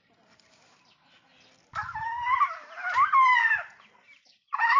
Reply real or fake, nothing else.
fake